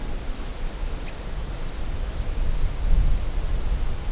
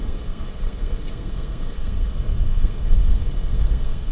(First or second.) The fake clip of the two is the second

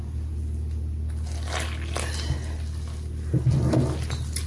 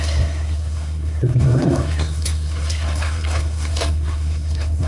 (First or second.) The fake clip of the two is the second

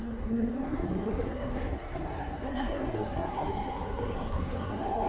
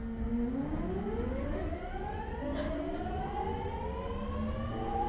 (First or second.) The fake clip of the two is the first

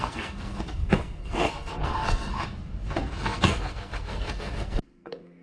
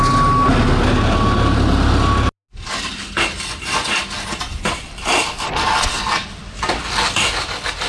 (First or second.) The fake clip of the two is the first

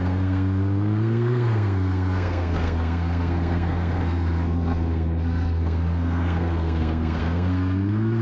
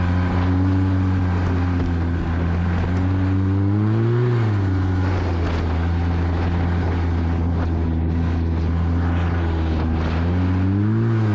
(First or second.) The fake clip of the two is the first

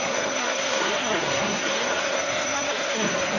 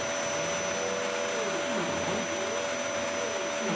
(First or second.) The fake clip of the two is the first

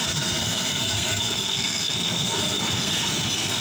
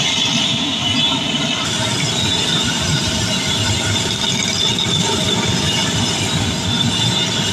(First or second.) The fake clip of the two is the first